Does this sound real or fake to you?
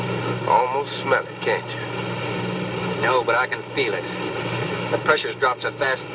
real